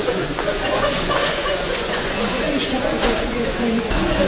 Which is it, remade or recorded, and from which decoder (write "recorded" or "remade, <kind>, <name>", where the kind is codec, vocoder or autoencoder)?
remade, vocoder, Vocos